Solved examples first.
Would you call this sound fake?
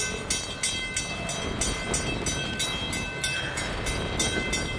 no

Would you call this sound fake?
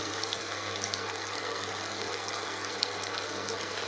yes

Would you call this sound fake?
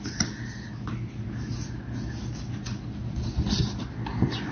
no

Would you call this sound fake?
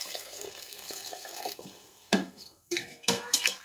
yes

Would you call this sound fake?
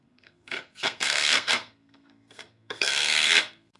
yes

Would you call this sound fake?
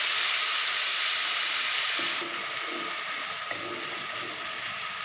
no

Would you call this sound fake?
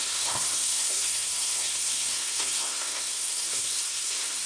yes